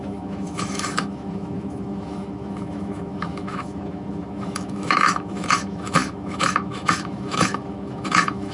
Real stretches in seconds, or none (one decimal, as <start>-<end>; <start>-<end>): none